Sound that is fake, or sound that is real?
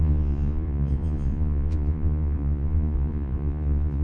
fake